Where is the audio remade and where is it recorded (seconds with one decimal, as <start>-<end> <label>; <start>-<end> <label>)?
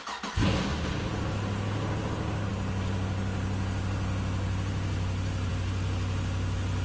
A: 0.0-6.8 recorded